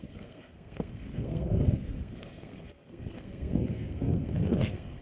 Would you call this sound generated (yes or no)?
yes